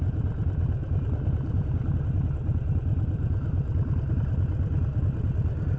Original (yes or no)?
yes